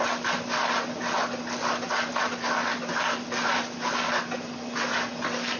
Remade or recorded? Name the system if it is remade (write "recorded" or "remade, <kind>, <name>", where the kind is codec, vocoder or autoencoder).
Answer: recorded